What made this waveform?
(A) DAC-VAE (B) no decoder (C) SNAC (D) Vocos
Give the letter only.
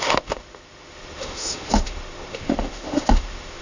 A